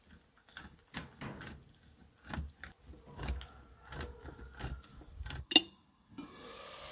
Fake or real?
real